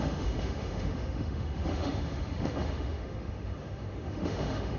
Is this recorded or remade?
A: remade